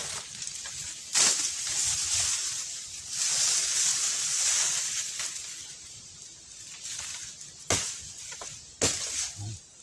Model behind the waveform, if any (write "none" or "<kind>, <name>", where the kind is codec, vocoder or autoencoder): none